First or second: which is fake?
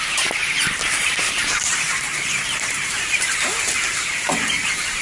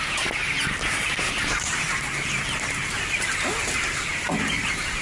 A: first